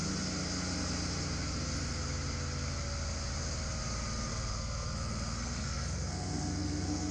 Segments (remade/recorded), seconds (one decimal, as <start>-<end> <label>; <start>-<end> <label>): 0.0-4.3 recorded; 4.3-7.1 remade